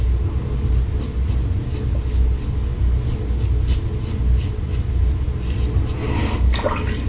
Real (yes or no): yes